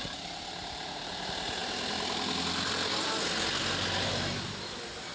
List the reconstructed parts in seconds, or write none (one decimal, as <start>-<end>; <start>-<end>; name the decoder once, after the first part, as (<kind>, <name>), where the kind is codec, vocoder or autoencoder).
none